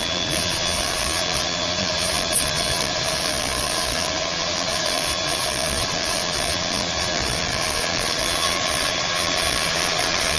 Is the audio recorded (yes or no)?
no